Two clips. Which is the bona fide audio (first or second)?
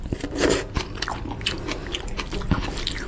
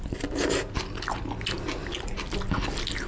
second